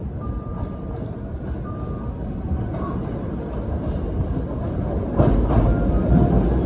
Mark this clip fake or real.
real